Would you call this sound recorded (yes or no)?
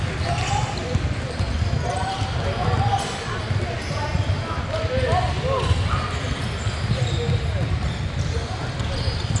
yes